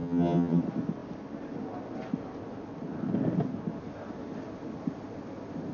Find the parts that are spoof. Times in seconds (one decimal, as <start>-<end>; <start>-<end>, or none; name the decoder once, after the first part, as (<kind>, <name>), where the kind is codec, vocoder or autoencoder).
0.0-0.6 (vocoder, HiFi-GAN)